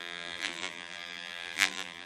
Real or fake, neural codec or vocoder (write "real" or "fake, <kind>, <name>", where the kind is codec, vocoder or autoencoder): fake, vocoder, BigVGAN v2